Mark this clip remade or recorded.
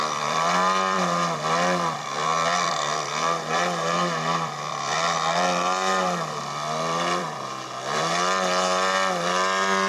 remade